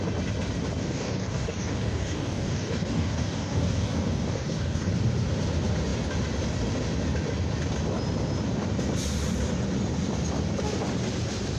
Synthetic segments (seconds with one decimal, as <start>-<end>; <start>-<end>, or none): 0.8-4.9